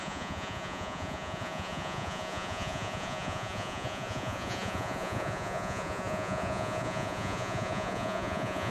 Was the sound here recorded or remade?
remade